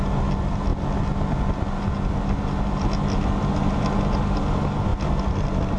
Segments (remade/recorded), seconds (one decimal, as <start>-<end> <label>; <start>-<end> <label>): 0.0-5.8 recorded